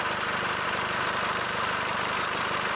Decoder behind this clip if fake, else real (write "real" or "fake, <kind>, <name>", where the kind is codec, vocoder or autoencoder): fake, vocoder, BigVGAN v2